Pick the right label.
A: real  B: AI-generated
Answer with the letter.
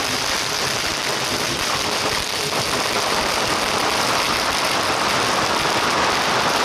B